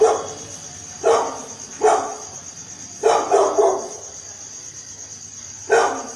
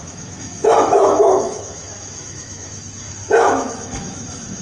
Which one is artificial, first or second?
second